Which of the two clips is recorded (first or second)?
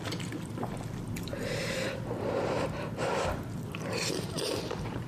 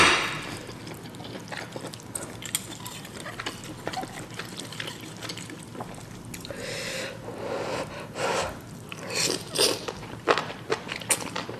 second